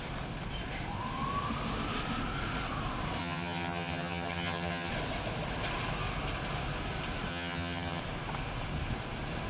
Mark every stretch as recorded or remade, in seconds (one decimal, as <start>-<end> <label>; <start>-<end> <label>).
0.0-3.2 recorded; 3.2-4.9 remade; 4.9-7.3 recorded; 7.3-8.0 remade; 8.0-9.5 recorded